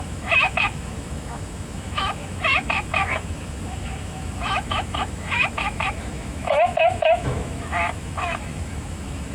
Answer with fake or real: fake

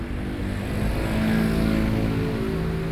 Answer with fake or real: real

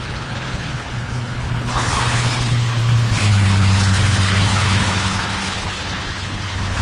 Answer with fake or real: fake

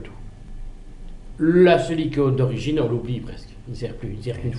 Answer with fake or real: real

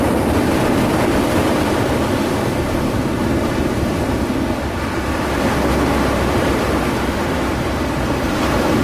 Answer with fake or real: real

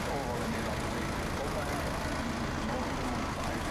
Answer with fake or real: real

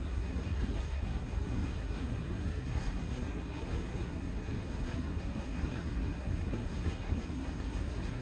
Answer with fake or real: fake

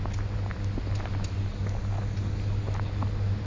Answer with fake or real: real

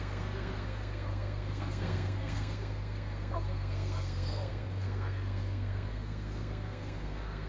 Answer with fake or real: fake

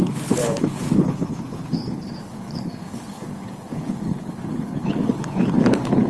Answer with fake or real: fake